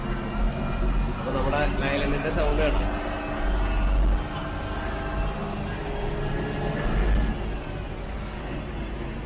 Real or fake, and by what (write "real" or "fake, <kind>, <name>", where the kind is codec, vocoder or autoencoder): real